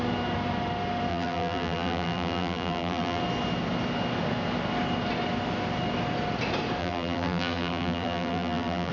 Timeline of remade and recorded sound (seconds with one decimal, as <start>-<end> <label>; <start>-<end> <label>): 0.0-1.1 recorded; 1.1-3.2 remade; 3.2-6.8 recorded; 6.8-8.9 remade